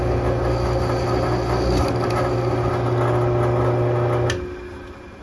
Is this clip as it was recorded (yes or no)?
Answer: yes